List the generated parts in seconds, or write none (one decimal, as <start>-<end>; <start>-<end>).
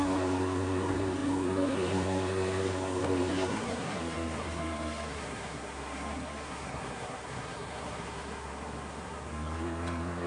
0.0-10.3